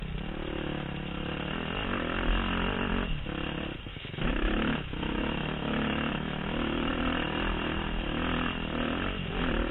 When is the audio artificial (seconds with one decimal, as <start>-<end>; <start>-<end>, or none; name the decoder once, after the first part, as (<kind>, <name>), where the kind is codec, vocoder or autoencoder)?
3.9-6.9 (autoencoder, DAC-VAE)